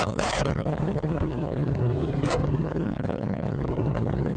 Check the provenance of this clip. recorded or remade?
remade